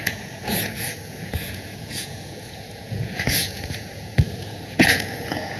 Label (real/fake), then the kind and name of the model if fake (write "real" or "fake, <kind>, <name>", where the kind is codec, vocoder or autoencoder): fake, vocoder, Vocos